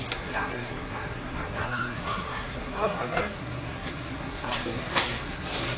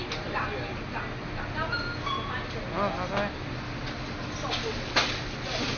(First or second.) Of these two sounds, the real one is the second